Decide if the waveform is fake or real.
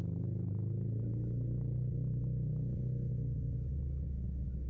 fake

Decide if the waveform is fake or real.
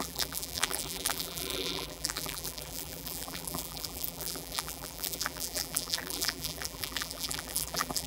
fake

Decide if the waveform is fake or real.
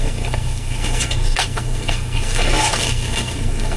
fake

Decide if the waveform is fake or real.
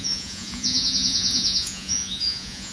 fake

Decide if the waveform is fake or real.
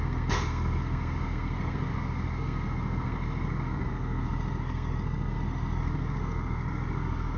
fake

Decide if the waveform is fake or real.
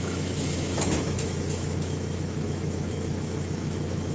fake